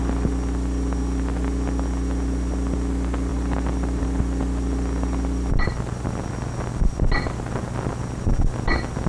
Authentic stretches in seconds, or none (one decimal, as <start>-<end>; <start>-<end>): 0.0-3.3; 4.0-9.1